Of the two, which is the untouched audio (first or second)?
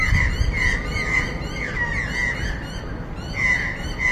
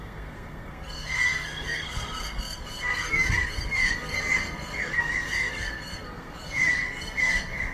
first